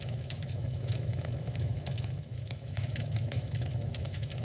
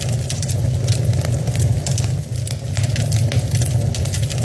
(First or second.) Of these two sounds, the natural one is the second